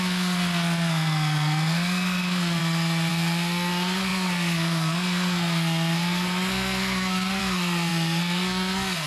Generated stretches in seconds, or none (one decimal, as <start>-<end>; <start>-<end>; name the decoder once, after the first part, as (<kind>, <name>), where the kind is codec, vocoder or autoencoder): 0.0-2.6 (codec, SNAC); 3.1-9.1